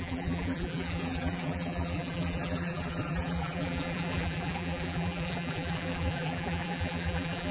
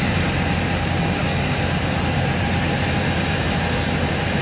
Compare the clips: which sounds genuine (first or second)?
second